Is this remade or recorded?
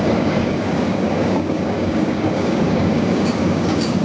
remade